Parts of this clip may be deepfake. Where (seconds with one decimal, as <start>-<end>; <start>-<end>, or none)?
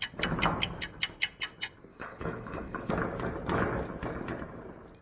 1.9-2.9